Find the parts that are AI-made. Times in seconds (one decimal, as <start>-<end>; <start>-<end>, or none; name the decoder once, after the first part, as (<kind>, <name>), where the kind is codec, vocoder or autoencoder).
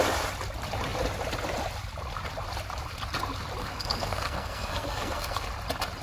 3.6-5.5 (codec, SNAC)